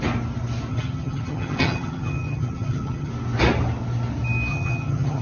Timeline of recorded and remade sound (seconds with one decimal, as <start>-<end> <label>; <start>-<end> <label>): 0.0-0.7 recorded; 0.7-3.1 remade; 3.1-4.5 recorded; 4.5-5.2 remade